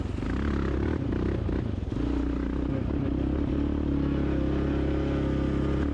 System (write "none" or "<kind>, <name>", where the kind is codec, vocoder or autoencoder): none